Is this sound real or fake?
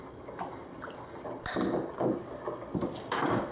real